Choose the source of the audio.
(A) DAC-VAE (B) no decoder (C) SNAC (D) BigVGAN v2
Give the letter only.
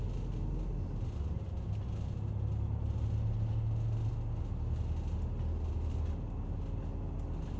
B